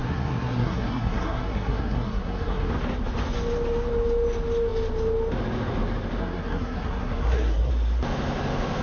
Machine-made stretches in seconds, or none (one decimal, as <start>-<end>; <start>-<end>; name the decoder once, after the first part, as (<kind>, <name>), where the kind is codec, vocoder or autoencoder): 0.0-2.7 (codec, SNAC); 6.2-7.7